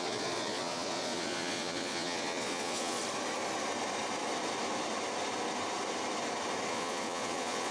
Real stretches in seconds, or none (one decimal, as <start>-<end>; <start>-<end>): 3.0-6.7